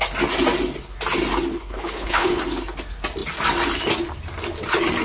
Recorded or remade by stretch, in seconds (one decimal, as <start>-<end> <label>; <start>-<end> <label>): 0.0-1.5 recorded; 1.5-2.4 remade; 2.4-5.0 recorded